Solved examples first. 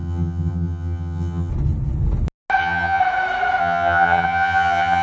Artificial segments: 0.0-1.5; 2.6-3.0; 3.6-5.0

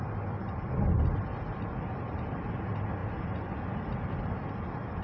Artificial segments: none

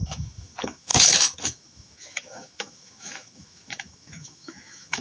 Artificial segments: 0.0-5.0

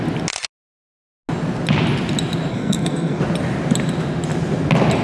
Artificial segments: 2.5-3.2

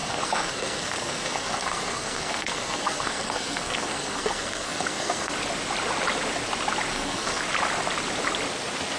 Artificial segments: 0.0-5.3; 6.9-7.4